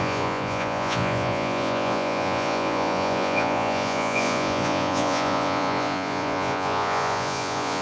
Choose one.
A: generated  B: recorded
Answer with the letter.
A